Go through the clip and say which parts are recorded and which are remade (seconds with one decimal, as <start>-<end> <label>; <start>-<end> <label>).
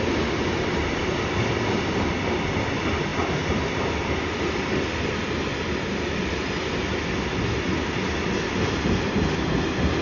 0.0-10.0 recorded